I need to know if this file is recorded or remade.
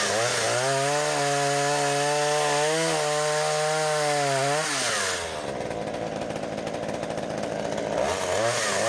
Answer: recorded